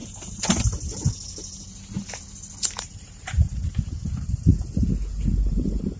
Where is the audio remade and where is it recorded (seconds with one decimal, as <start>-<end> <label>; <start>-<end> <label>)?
0.0-2.7 recorded; 2.7-4.5 remade; 4.5-5.1 recorded; 5.1-6.0 remade